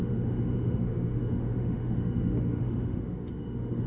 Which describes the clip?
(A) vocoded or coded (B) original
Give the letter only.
A